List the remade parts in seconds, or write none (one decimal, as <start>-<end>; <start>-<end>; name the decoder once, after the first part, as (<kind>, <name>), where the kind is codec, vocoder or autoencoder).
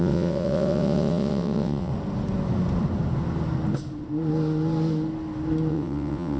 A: 0.0-1.9 (vocoder, WaveNeXt); 5.7-6.4